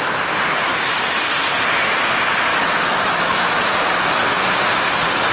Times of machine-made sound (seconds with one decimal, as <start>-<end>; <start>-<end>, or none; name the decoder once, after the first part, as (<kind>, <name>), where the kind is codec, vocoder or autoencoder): 0.7-1.3 (autoencoder, DAC-VAE); 2.5-3.6